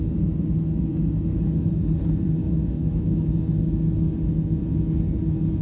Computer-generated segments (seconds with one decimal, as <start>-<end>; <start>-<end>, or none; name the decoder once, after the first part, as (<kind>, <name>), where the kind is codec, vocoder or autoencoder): 2.4-3.3 (autoencoder, DAC-VAE)